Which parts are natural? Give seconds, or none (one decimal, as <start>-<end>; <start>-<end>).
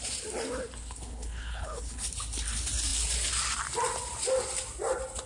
0.0-0.8; 2.1-5.3